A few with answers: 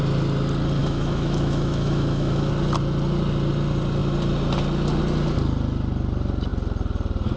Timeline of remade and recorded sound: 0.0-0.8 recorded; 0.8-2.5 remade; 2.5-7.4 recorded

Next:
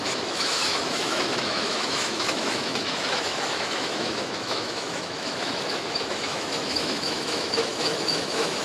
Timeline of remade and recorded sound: 0.0-8.6 remade

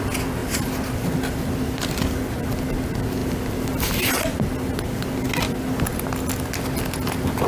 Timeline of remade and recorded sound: 0.0-7.5 recorded

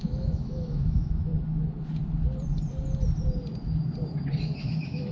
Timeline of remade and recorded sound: 0.0-1.3 remade; 1.3-4.4 recorded; 4.4-5.1 remade